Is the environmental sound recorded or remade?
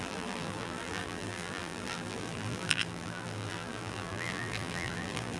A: remade